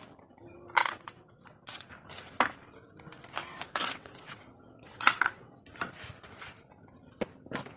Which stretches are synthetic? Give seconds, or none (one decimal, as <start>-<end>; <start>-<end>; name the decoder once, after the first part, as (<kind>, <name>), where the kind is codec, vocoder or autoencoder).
0.8-1.9 (vocoder, WaveNeXt); 3.5-5.6